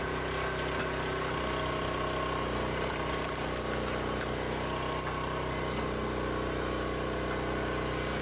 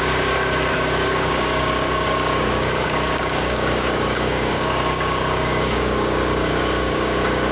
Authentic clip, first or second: first